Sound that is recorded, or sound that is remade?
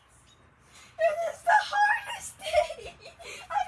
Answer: recorded